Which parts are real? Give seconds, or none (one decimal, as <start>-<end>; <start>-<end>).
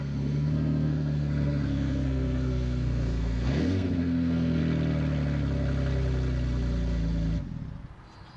4.6-8.4